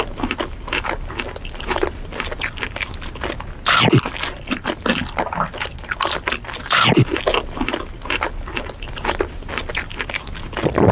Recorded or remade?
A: recorded